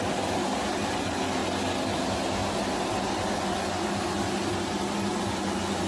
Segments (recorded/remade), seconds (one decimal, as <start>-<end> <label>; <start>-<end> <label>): 0.0-5.9 recorded